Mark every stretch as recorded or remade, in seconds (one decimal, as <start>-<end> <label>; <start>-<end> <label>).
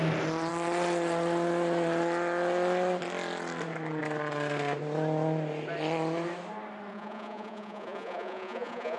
0.0-6.9 recorded; 6.9-9.0 remade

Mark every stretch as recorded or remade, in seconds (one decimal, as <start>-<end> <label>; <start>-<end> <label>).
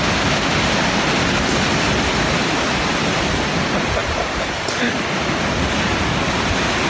0.0-4.0 recorded; 4.0-4.7 remade; 4.7-6.9 recorded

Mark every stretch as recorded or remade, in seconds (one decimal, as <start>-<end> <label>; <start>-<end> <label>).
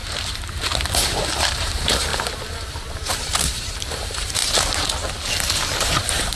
0.0-0.9 recorded; 0.9-2.1 remade; 2.1-2.9 recorded; 2.9-4.4 remade; 4.4-6.4 recorded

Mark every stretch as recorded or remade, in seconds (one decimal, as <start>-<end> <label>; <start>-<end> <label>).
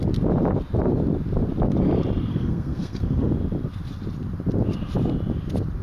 0.0-2.3 recorded; 2.3-3.3 remade; 3.3-5.8 recorded